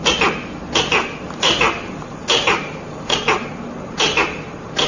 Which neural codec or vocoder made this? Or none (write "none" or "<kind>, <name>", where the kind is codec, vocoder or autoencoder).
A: none